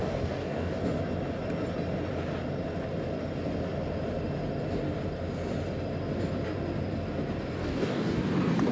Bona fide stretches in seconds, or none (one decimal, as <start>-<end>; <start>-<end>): 0.8-7.6; 8.2-8.7